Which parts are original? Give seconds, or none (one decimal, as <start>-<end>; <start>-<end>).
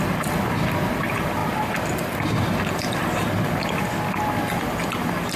none